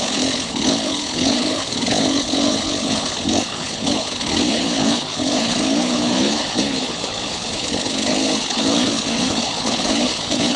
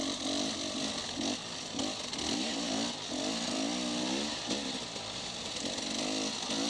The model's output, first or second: first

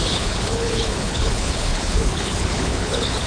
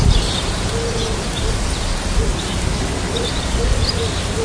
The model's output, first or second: first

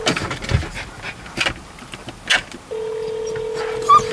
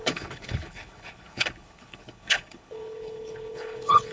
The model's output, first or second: second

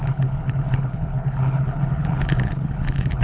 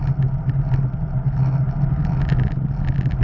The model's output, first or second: first